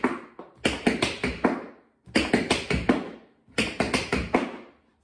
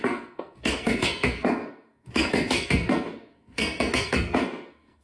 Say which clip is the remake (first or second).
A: second